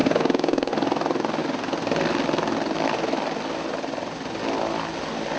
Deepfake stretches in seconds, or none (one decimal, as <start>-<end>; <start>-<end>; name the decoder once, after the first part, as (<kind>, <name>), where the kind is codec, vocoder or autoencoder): 0.0-0.7 (codec, DAC)